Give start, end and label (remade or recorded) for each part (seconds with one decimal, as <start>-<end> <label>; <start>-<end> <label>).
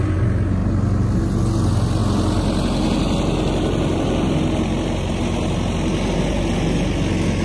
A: 0.0-7.4 recorded